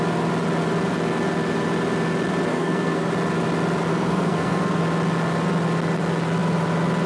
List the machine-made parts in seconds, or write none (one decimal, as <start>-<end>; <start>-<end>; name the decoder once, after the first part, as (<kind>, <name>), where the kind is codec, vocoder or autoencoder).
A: 2.5-3.1 (codec, SNAC); 3.9-4.8